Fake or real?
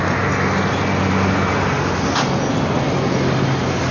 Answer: real